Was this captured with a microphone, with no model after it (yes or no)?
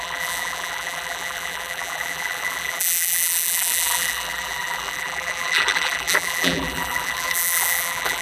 no